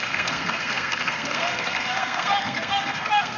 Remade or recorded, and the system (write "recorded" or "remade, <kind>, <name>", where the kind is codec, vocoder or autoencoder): remade, codec, SNAC